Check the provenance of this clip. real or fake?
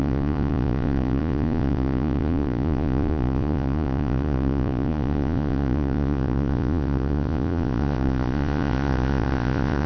fake